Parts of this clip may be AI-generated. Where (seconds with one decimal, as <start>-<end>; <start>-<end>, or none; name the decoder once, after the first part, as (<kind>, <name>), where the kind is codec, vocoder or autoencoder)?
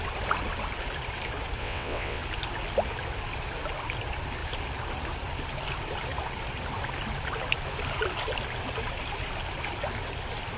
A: 1.6-2.2 (vocoder, WaveNeXt)